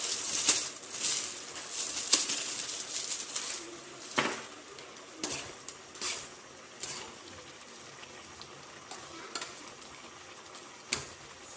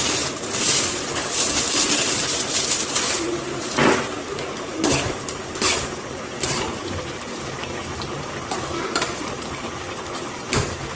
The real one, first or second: first